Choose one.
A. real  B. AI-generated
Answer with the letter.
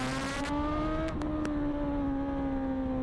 A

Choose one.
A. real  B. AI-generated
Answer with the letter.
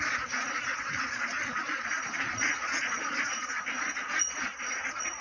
B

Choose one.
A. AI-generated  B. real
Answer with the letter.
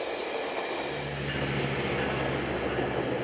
B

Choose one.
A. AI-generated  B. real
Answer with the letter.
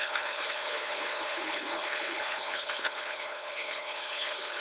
A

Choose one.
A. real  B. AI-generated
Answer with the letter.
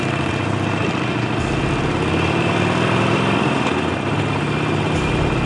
A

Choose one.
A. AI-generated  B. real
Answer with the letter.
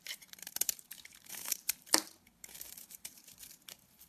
A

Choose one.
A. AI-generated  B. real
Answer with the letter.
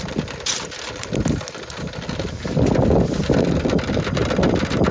B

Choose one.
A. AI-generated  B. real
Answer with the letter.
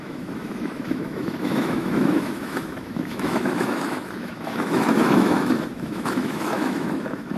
A